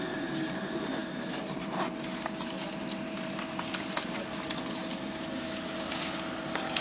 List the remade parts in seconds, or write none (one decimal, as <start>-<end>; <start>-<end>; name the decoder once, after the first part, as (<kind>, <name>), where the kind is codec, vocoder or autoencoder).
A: none